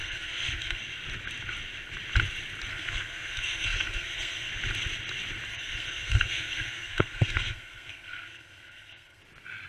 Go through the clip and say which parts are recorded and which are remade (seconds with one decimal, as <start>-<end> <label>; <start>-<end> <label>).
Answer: 0.0-0.8 remade; 0.8-2.7 recorded; 2.7-4.5 remade; 4.5-5.5 recorded; 5.5-9.2 remade; 9.2-9.7 recorded